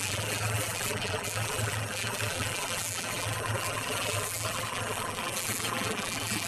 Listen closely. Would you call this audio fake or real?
fake